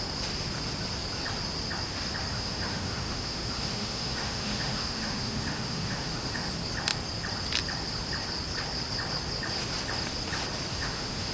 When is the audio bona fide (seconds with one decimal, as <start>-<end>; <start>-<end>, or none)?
0.0-2.3; 6.5-10.7